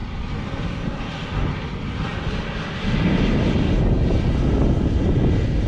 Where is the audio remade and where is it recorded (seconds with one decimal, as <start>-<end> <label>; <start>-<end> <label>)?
0.0-5.7 recorded